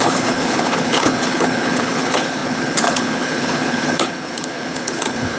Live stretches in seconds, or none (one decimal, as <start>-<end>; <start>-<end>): none